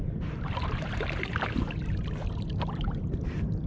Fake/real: fake